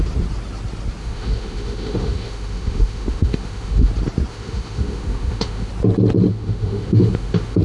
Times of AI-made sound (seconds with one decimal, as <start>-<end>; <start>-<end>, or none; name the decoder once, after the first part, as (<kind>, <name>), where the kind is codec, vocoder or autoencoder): 1.0-3.9 (autoencoder, DAC-VAE); 4.3-5.7; 6.3-7.6